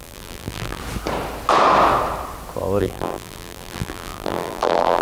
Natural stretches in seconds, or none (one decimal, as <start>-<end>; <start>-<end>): 0.8-2.8